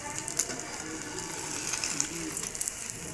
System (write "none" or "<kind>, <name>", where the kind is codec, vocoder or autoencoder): none